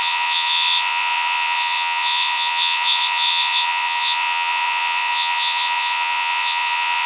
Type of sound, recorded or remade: remade